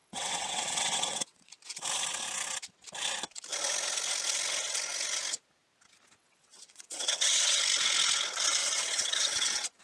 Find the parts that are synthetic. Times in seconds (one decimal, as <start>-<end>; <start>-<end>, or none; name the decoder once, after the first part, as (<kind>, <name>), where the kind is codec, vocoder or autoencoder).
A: 0.0-1.5 (vocoder, WaveNeXt); 6.2-7.6; 8.6-9.8

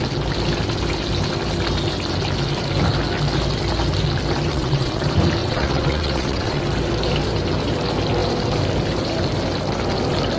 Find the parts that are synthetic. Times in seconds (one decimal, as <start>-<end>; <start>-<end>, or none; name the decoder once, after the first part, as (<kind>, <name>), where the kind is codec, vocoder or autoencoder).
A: 4.5-5.0 (vocoder, WaveNeXt); 5.4-6.6